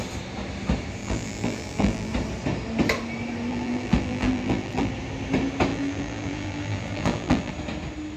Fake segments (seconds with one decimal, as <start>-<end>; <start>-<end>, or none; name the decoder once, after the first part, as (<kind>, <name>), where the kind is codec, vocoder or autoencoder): 1.0-2.1 (vocoder, BigVGAN v2); 3.5-4.9; 5.7-7.5

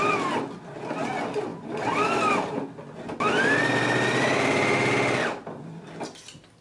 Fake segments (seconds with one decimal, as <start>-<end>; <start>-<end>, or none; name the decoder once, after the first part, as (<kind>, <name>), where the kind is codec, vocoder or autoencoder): none

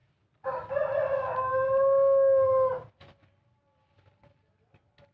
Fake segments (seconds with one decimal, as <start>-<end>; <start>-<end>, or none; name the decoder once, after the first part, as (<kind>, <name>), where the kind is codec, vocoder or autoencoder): none

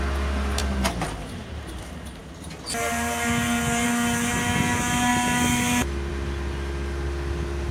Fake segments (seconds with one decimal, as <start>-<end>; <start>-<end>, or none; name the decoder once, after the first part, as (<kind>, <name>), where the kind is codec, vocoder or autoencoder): 0.6-1.8 (vocoder, BigVGAN v2)

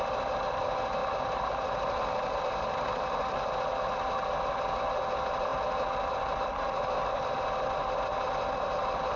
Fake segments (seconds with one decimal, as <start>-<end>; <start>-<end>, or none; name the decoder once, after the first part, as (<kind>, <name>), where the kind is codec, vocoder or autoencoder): 1.0-2.4 (vocoder, BigVGAN v2)

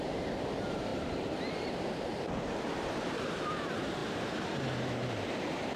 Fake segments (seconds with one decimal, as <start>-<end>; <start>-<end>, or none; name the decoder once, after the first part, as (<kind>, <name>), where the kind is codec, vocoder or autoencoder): 0.0-4.0 (vocoder, BigVGAN v2); 5.3-5.8

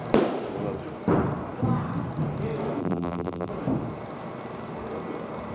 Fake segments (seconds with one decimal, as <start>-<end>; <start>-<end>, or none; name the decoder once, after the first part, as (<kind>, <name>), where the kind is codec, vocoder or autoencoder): 2.8-3.5 (vocoder, BigVGAN v2)